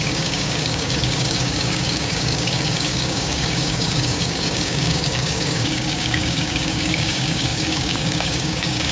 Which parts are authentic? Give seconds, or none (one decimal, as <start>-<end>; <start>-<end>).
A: none